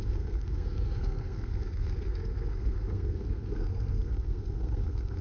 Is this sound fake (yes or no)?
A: yes